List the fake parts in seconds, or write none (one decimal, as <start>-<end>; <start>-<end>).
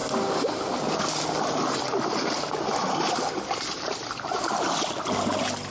none